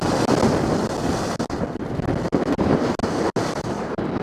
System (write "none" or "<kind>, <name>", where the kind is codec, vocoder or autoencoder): none